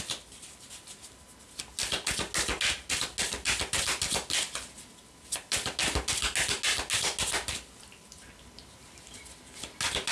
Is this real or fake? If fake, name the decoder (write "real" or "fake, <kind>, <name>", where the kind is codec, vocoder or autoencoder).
real